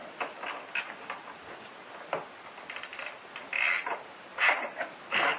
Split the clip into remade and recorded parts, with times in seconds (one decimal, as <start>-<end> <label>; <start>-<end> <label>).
0.0-4.3 recorded; 4.3-5.4 remade